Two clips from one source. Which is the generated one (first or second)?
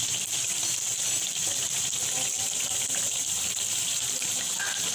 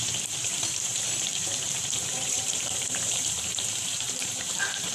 second